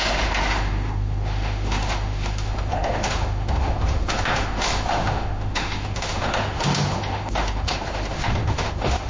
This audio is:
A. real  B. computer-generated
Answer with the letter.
B